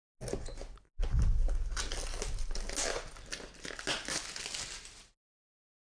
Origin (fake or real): real